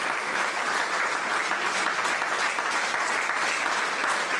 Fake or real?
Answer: real